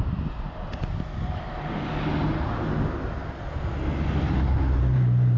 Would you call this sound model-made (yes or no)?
no